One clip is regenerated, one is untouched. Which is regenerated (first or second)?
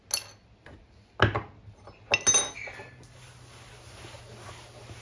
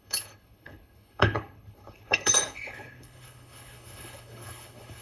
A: second